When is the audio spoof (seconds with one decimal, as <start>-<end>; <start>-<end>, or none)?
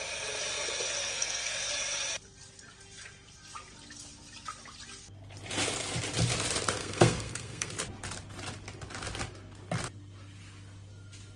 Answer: 1.0-1.7; 6.8-7.7